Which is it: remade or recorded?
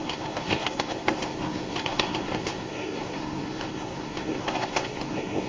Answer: remade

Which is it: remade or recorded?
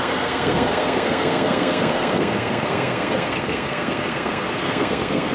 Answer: remade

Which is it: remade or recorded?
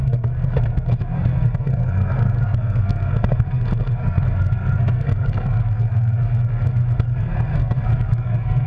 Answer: remade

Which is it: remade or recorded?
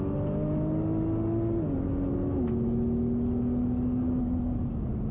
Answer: recorded